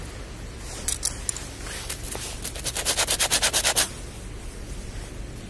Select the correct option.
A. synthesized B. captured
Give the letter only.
B